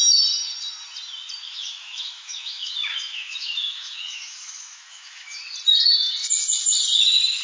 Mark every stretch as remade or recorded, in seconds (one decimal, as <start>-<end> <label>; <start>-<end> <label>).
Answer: 0.0-1.5 recorded; 1.5-5.4 remade; 5.4-7.4 recorded